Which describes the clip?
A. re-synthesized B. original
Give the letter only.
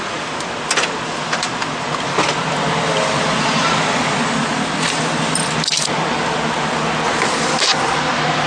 B